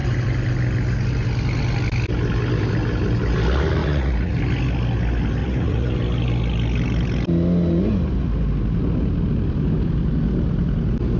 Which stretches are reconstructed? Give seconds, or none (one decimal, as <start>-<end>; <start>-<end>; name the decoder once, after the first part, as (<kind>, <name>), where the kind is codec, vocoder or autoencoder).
3.8-4.4 (vocoder, Vocos); 5.4-5.9